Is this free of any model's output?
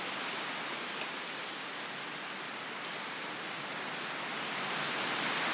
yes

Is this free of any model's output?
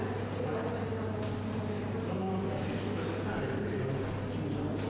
yes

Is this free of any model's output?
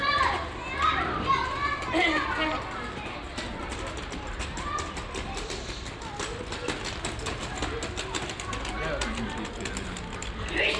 yes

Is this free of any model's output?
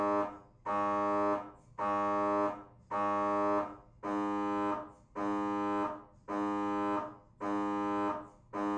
yes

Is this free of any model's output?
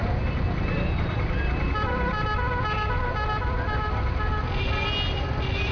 yes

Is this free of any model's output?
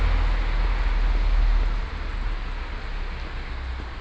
yes